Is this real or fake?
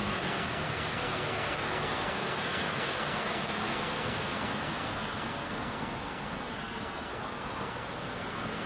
fake